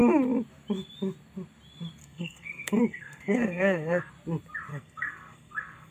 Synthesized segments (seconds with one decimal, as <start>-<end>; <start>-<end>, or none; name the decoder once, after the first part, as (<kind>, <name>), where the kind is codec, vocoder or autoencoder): 2.0-4.1 (codec, SNAC); 4.7-5.9